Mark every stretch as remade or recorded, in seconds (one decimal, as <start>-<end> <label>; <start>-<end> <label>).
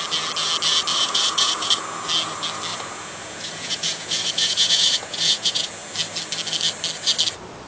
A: 0.0-0.9 recorded; 0.9-1.7 remade; 1.7-2.7 recorded; 2.7-5.7 remade; 5.7-7.7 recorded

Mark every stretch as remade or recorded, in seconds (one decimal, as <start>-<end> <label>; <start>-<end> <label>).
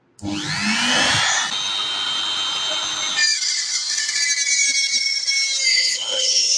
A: 0.0-5.7 recorded; 5.7-6.6 remade